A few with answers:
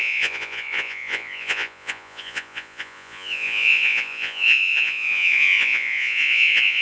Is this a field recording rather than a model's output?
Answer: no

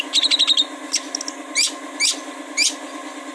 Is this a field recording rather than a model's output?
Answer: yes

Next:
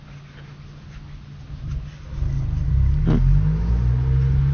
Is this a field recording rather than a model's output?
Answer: yes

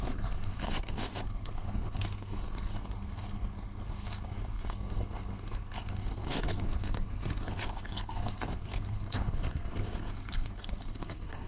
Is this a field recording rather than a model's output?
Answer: no